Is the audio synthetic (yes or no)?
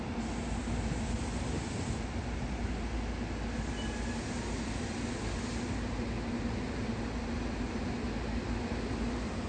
no